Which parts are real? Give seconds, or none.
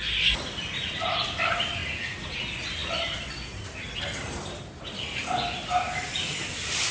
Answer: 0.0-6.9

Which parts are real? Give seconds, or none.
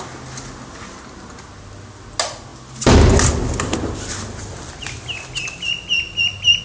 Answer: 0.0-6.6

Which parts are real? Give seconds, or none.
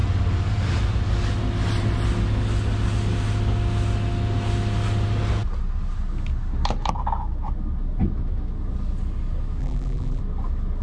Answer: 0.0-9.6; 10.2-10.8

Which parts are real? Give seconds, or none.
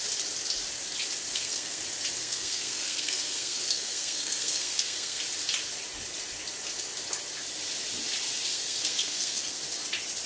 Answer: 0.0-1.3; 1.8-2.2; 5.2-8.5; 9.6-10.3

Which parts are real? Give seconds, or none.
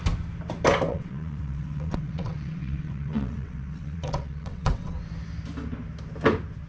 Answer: 0.0-0.9; 4.9-6.7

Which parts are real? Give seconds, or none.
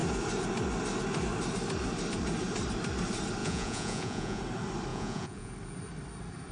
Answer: 0.0-3.4; 4.4-4.9; 5.5-6.5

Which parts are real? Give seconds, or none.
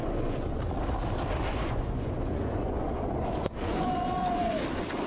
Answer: 0.6-1.5; 4.6-5.1